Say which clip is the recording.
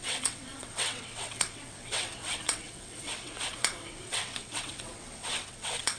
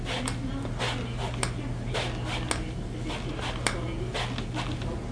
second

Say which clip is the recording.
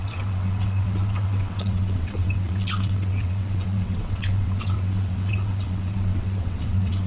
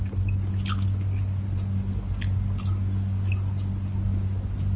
second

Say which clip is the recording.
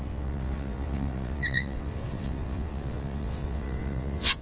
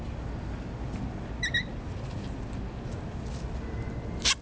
second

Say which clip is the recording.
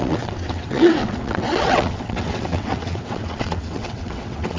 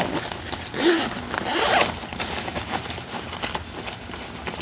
second